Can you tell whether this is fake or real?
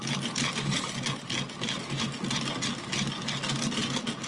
real